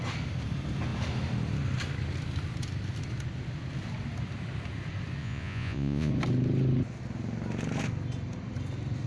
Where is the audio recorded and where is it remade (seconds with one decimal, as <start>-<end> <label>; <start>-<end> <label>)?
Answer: 0.0-5.2 recorded; 5.2-6.1 remade; 6.1-9.1 recorded